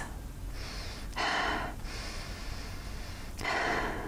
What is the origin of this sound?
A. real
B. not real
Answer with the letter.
A